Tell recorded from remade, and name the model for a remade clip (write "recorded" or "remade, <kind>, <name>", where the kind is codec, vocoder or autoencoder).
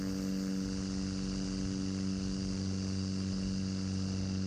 recorded